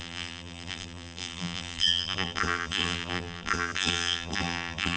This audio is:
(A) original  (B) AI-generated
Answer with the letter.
B